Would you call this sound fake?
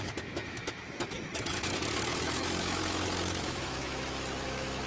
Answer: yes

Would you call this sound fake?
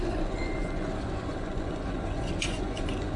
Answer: yes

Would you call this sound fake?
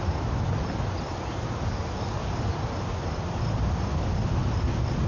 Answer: no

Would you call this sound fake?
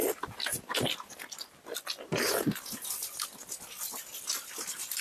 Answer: no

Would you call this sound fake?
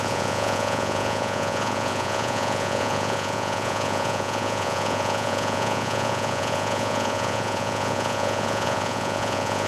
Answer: yes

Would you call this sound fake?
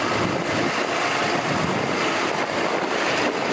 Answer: no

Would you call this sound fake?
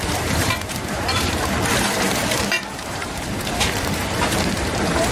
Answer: yes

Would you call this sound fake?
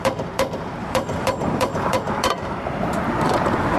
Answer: yes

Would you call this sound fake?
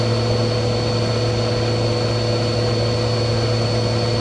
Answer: no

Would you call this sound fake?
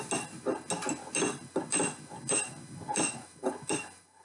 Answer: no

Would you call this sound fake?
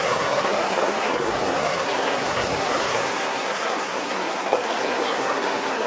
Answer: yes